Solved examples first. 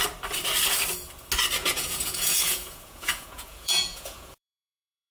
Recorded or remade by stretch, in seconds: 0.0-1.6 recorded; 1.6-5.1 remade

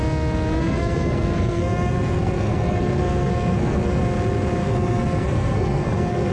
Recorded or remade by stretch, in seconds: 0.0-0.6 recorded; 0.6-4.0 remade; 4.0-4.6 recorded; 4.6-6.3 remade